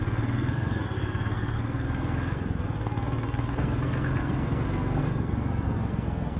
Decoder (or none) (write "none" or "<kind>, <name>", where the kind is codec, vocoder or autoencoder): codec, SNAC